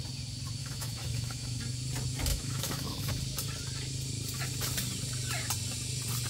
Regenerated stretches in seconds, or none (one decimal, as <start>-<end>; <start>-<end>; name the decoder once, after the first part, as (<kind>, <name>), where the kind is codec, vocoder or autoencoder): 0.6-1.6 (autoencoder, DAC-VAE); 2.3-3.1

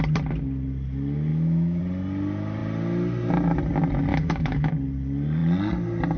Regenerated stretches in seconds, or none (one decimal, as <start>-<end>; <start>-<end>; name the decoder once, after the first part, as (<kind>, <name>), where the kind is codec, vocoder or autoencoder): 1.3-1.8 (autoencoder, DAC-VAE); 4.1-4.7

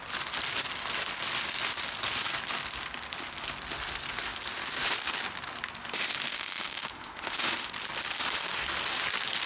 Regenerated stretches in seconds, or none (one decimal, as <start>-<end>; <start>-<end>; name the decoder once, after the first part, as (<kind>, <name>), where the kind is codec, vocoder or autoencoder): 6.3-7.7 (autoencoder, DAC-VAE)

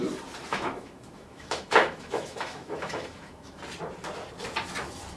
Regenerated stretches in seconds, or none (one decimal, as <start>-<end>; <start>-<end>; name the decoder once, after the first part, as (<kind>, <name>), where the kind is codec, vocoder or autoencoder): 0.5-3.6 (autoencoder, DAC-VAE)